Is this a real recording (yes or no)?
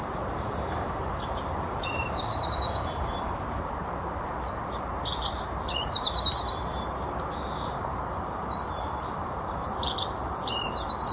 no